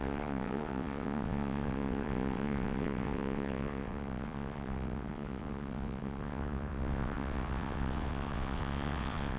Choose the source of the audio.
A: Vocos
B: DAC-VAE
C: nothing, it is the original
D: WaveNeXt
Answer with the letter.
D